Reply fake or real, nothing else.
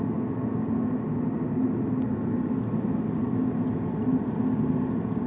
real